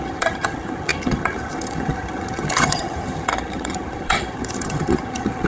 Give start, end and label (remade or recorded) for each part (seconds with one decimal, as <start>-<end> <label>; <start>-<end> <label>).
0.0-5.5 remade